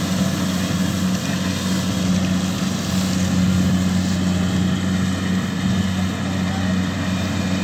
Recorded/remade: recorded